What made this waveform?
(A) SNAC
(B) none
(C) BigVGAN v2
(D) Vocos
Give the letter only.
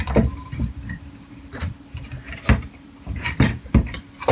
C